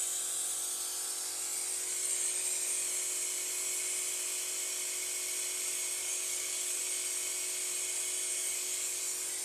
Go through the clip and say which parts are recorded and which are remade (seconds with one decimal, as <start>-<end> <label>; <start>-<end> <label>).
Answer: 0.0-6.0 recorded; 6.0-6.8 remade; 6.8-8.3 recorded; 8.3-9.0 remade; 9.0-9.4 recorded